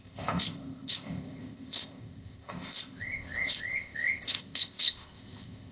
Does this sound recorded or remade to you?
remade